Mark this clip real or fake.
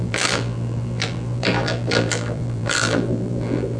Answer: fake